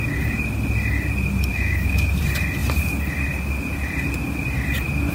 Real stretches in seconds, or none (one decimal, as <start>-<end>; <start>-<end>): 0.0-1.5; 2.2-5.1